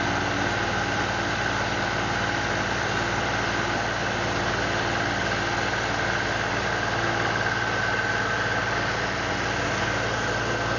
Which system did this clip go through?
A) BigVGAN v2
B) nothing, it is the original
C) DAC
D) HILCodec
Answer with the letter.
B